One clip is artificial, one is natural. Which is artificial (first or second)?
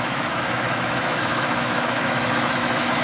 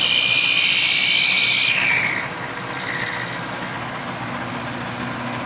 first